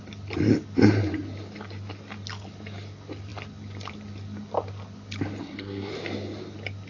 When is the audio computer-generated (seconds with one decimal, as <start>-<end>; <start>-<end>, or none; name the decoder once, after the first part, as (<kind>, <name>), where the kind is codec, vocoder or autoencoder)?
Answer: 5.4-5.9 (codec, SNAC)